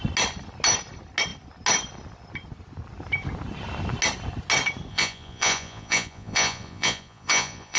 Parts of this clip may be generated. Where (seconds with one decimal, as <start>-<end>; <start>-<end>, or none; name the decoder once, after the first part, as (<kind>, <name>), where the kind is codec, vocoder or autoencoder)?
4.9-7.8 (vocoder, Vocos)